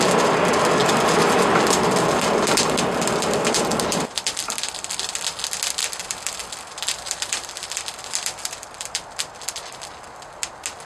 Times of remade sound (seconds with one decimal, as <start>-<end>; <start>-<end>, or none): 0.8-4.6; 5.8-9.8